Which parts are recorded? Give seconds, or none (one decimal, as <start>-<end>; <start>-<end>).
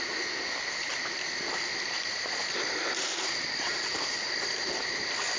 0.0-3.7; 4.2-5.4